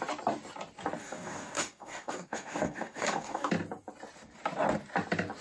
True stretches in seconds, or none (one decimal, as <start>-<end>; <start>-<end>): 0.0-1.0; 3.5-5.4